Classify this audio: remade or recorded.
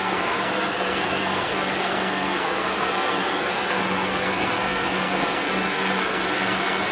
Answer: remade